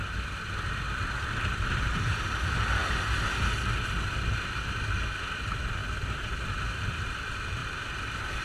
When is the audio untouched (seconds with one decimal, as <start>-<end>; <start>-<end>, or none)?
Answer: 0.0-8.4